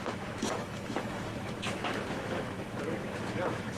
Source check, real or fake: fake